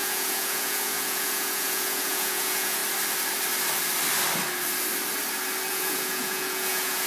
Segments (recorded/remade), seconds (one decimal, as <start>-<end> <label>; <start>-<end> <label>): 0.0-2.8 remade; 2.8-5.7 recorded; 5.7-7.1 remade